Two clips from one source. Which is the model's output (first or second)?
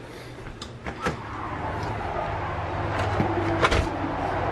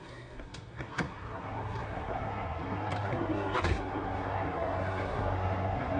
second